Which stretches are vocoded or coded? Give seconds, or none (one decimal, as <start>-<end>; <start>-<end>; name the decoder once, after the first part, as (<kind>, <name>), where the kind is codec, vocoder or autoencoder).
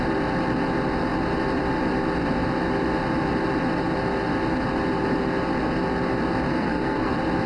6.5-7.1 (codec, SNAC)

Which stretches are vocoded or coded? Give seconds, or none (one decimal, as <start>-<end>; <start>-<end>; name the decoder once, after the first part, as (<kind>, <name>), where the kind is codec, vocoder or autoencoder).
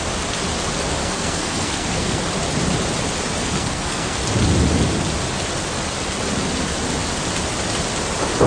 1.0-2.2 (codec, SNAC); 3.4-4.2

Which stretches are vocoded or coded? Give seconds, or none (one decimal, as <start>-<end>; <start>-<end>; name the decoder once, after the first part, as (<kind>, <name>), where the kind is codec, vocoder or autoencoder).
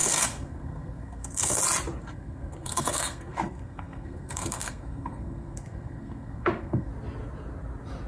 0.0-1.6 (codec, SNAC); 2.0-6.9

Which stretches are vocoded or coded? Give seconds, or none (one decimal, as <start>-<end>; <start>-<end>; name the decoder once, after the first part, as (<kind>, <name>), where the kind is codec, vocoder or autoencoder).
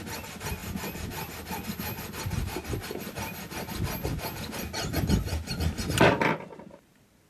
none